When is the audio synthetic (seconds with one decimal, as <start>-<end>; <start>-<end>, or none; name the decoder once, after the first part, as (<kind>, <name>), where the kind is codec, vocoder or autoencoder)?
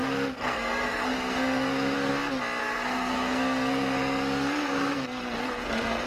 0.0-2.1 (codec, SNAC); 2.6-6.1